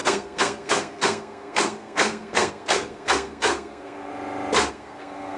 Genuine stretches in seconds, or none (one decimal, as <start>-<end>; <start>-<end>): 4.1-4.7